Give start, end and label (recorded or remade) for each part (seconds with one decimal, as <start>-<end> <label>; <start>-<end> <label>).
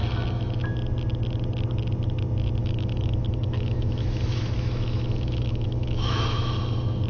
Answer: 0.0-2.6 recorded; 2.6-6.5 remade; 6.5-7.1 recorded